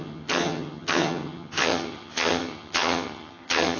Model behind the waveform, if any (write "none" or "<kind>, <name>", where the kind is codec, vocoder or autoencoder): vocoder, HiFi-GAN